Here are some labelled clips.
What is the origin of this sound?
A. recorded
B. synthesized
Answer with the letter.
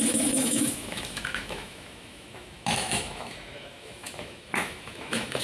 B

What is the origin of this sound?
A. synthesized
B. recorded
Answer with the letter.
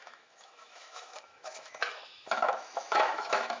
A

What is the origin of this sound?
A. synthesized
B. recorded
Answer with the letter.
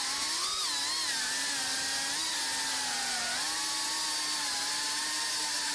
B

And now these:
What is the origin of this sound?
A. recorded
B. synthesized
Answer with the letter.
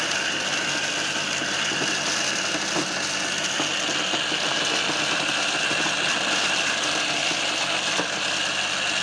A